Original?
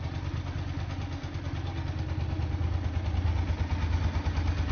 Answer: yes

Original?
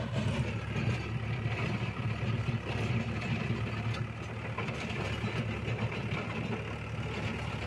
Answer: yes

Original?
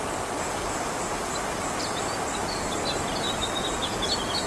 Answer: yes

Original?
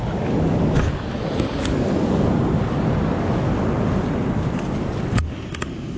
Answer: yes